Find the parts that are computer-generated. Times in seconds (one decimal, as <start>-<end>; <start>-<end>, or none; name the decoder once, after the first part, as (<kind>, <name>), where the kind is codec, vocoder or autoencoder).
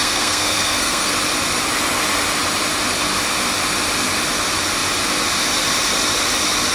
0.0-1.1 (codec, SNAC)